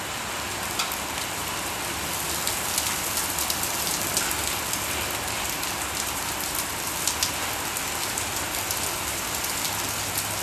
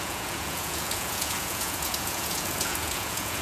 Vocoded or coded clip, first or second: second